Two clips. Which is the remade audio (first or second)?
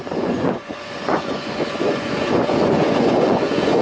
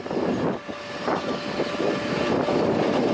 first